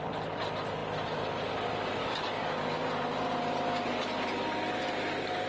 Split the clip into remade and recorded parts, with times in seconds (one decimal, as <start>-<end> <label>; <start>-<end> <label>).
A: 0.0-2.0 recorded; 2.0-2.8 remade; 2.8-5.5 recorded